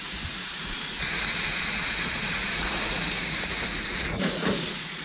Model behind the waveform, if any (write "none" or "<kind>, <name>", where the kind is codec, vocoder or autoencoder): vocoder, Vocos